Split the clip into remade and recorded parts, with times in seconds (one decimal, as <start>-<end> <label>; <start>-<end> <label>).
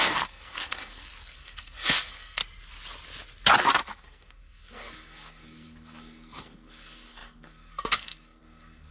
0.0-2.4 remade; 2.4-3.6 recorded; 3.6-8.9 remade